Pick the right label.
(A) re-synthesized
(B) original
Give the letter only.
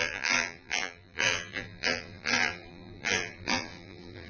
A